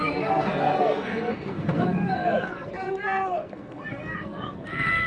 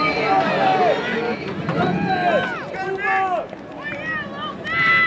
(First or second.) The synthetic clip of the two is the first